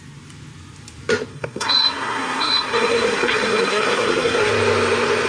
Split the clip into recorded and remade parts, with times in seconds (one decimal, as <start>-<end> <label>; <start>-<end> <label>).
0.0-1.3 recorded; 1.3-4.5 remade; 4.5-5.3 recorded